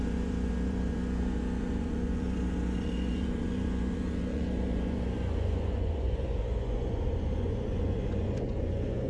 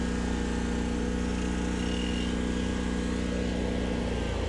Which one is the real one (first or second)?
second